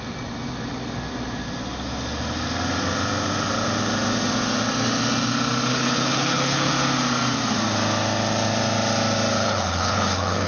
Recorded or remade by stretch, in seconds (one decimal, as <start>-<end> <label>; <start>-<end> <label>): 0.0-5.7 recorded; 5.7-6.7 remade; 6.7-9.4 recorded; 9.4-10.5 remade